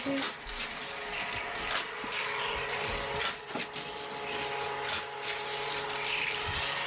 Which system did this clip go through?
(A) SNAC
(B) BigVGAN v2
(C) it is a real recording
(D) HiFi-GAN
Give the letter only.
C